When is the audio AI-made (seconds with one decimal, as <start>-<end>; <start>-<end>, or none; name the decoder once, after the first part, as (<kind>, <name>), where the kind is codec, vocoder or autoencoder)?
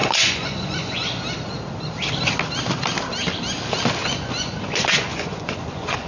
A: 0.0-1.2 (vocoder, Vocos); 4.0-6.1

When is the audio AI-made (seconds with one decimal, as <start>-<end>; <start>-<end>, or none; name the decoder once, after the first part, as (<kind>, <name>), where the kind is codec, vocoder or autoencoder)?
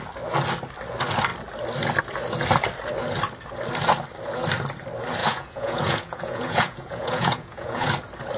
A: 5.2-7.9 (vocoder, Vocos)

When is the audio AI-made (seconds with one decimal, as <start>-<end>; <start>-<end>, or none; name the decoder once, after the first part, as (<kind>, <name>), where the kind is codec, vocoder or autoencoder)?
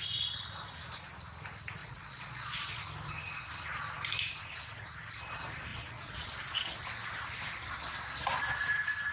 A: 1.8-2.8 (vocoder, Vocos); 5.7-6.3